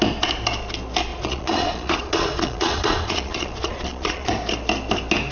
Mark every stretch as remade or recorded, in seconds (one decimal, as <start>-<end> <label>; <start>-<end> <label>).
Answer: 0.0-1.1 recorded; 1.1-4.3 remade; 4.3-5.3 recorded